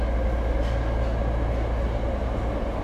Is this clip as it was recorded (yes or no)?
yes